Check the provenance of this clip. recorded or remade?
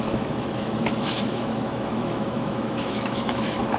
remade